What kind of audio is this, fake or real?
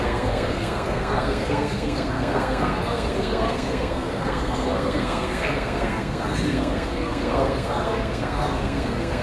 fake